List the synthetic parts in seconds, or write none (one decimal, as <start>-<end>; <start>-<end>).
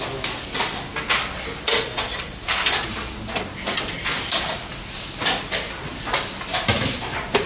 1.9-2.8